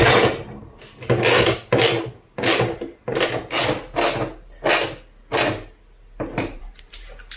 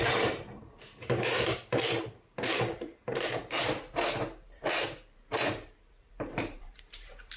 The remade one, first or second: second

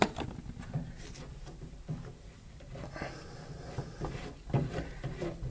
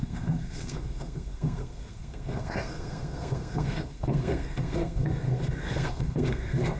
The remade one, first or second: second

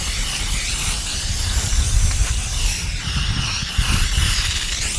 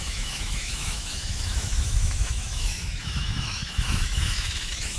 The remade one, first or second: second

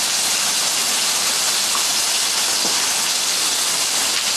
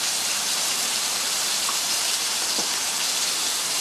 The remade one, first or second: second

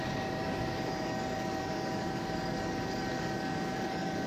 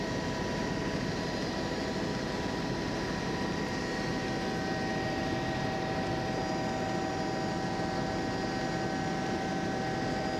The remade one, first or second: first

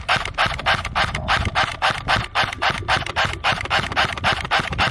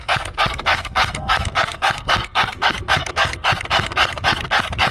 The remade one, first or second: second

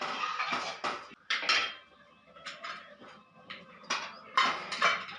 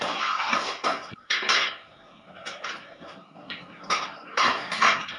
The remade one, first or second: second